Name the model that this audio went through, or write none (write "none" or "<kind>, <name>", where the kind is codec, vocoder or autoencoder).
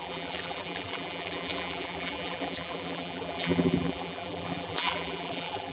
vocoder, BigVGAN v2